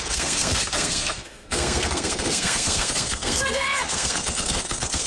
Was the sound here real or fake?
fake